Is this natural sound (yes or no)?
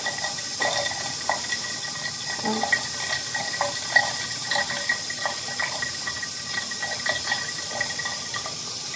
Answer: yes